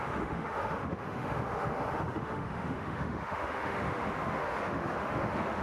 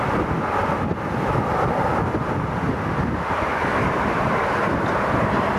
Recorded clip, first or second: second